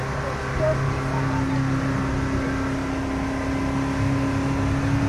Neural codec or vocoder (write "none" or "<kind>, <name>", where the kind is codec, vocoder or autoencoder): none